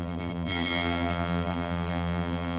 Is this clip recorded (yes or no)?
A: no